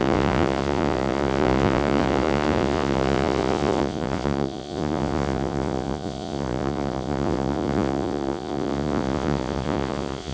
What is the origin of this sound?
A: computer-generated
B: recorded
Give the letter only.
A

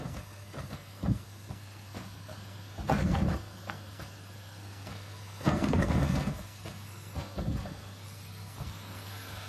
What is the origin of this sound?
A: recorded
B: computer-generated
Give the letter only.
B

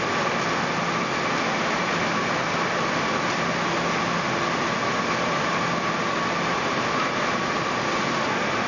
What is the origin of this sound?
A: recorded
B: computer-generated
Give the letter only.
A